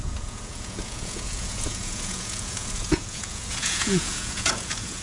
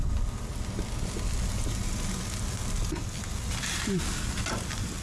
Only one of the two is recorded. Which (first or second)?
second